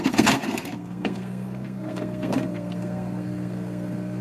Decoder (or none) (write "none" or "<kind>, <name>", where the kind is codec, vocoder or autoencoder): codec, SNAC